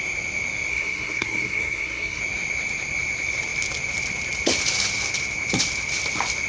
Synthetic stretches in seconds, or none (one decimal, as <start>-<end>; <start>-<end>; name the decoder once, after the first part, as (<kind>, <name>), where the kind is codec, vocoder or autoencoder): 0.7-2.2 (codec, SNAC)